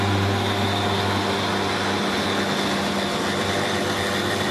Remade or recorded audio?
recorded